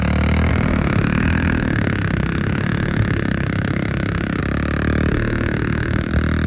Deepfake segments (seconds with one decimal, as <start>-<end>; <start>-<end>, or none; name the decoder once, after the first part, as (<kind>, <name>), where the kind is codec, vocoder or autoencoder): 0.5-4.4 (autoencoder, DAC-VAE); 5.1-6.1